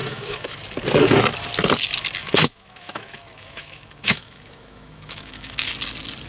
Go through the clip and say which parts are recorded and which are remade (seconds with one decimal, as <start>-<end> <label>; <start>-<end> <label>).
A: 0.0-0.6 remade; 0.6-2.2 recorded; 2.2-5.7 remade; 5.7-6.3 recorded